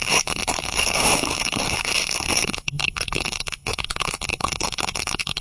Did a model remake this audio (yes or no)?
yes